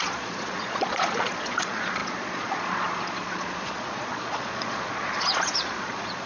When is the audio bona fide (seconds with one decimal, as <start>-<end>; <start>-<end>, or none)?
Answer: none